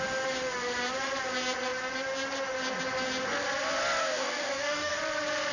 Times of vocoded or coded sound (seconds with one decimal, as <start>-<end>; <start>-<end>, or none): 4.0-5.0